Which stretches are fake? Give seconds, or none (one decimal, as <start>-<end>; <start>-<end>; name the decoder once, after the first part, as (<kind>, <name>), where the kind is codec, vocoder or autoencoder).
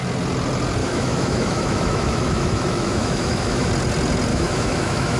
0.8-3.7 (autoencoder, DAC-VAE); 4.3-5.2